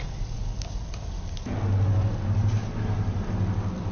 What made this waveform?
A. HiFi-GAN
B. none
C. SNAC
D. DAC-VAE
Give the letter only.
B